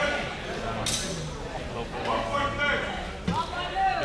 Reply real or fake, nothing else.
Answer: real